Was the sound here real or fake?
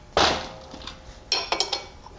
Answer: real